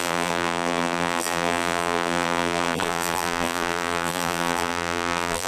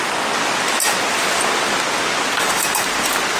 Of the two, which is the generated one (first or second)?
first